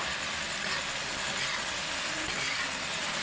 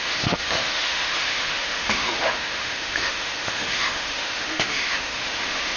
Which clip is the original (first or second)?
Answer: first